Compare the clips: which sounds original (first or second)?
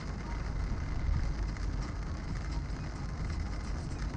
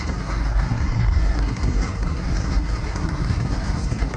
first